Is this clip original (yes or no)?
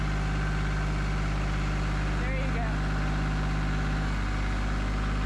yes